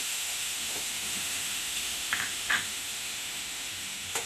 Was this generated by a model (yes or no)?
yes